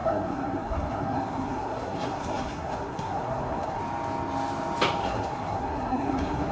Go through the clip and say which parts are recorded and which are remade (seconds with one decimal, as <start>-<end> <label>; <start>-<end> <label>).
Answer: 0.0-3.8 remade; 3.8-5.0 recorded; 5.0-6.5 remade

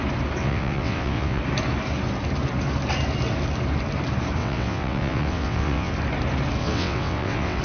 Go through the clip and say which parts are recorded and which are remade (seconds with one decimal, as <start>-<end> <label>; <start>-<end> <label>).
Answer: 0.0-0.4 recorded; 0.4-1.4 remade; 1.4-4.4 recorded; 4.4-5.9 remade; 5.9-6.6 recorded; 6.6-7.6 remade

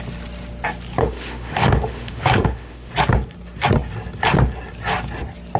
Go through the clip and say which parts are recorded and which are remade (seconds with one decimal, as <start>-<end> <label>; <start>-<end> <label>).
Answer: 0.0-1.0 recorded; 1.0-2.9 remade; 2.9-5.6 recorded

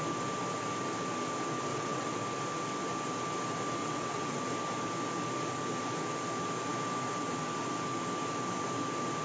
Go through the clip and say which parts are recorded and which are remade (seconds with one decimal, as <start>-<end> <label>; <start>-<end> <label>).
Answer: 0.0-1.7 recorded; 1.7-2.2 remade; 2.2-3.8 recorded; 3.8-4.4 remade; 4.4-9.2 recorded

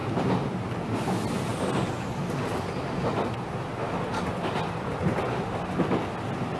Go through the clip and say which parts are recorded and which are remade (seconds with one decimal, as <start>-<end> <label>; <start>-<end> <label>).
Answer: 0.0-6.6 recorded

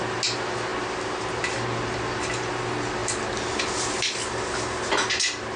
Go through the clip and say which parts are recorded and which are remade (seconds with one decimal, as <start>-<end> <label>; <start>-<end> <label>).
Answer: 0.0-5.6 recorded

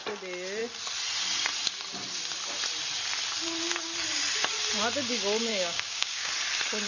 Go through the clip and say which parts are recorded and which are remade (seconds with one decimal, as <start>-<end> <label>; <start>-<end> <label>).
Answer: 0.0-5.5 recorded; 5.5-6.3 remade; 6.3-6.9 recorded